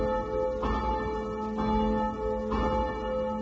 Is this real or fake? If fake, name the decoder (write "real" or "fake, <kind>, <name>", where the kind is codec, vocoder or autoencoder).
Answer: real